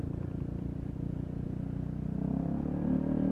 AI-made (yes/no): no